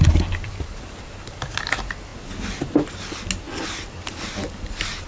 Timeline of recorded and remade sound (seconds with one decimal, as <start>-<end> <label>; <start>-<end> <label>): 0.0-5.1 recorded